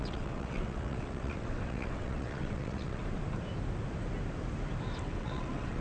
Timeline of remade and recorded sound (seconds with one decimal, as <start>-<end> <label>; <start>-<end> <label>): 0.0-3.0 remade; 3.0-5.0 recorded; 5.0-5.8 remade

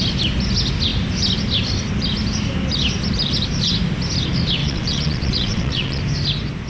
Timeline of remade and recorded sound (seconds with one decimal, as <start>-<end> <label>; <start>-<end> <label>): 0.0-4.6 recorded; 4.6-6.0 remade; 6.0-6.7 recorded

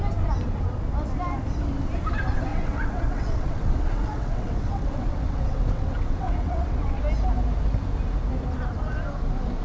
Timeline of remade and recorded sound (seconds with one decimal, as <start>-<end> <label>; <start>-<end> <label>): 0.0-2.5 recorded; 2.5-7.0 remade; 7.0-9.6 recorded